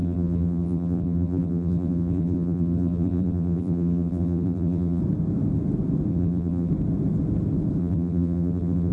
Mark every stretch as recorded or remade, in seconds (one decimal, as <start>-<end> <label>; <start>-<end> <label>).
0.0-5.0 remade; 5.0-6.1 recorded; 6.1-6.7 remade; 6.7-7.8 recorded; 7.8-8.9 remade